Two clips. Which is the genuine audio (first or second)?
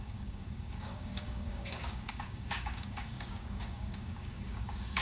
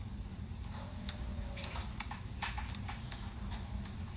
second